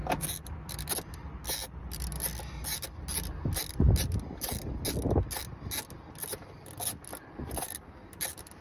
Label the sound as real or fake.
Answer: real